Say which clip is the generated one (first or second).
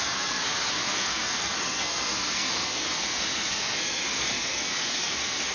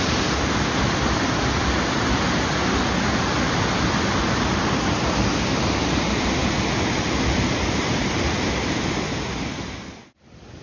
first